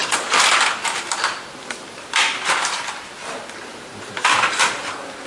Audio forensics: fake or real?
real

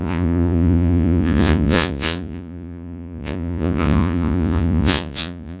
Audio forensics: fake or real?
fake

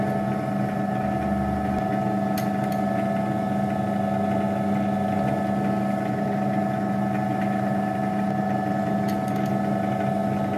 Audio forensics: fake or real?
real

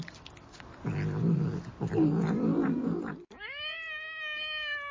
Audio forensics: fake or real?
real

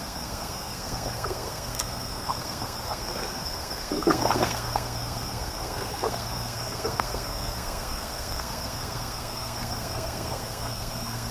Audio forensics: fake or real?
fake